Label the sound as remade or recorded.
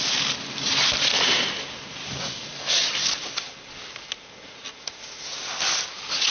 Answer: recorded